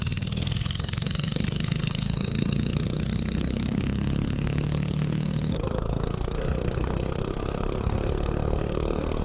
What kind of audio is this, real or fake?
fake